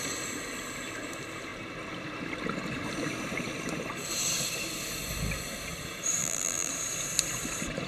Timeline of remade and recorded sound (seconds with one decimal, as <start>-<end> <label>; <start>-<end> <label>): 0.0-6.2 recorded; 6.2-6.7 remade; 6.7-7.9 recorded